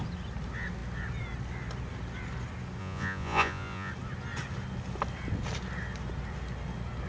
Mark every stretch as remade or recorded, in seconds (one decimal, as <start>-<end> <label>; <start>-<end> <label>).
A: 0.0-2.8 recorded; 2.8-3.9 remade; 3.9-7.1 recorded